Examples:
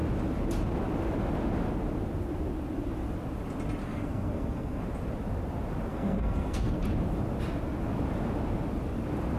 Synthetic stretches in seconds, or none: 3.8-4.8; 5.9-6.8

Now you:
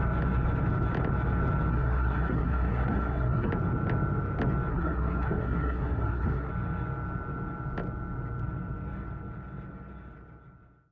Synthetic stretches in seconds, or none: 1.7-3.5; 4.7-6.5

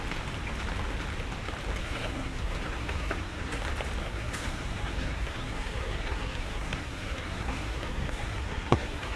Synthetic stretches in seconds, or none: 1.8-3.6; 4.0-9.2

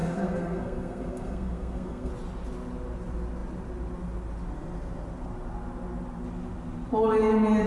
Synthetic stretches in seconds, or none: 0.0-2.1

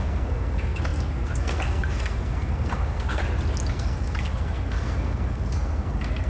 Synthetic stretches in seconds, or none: 0.0-3.2; 3.7-6.3

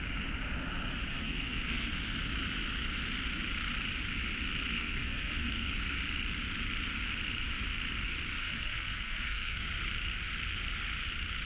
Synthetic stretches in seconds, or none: 1.1-1.9; 4.7-5.7; 8.4-9.6